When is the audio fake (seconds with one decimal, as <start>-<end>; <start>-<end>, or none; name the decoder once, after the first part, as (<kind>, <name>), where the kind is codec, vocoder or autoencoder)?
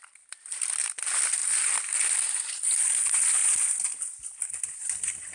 none